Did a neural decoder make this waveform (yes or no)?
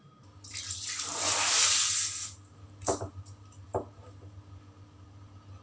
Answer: no